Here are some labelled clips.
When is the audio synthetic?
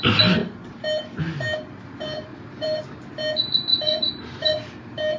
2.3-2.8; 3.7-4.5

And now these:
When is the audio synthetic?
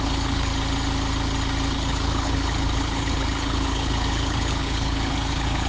0.0-0.5; 1.7-5.7